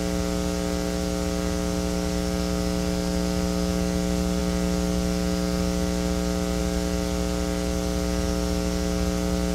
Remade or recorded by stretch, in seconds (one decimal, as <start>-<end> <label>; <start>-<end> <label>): 0.0-9.5 recorded